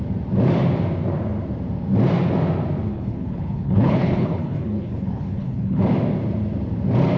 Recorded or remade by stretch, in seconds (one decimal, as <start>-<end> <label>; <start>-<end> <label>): 0.0-2.9 recorded; 2.9-5.8 remade; 5.8-7.2 recorded